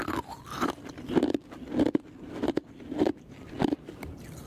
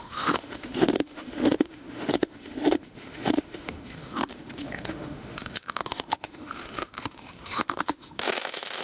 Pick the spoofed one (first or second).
second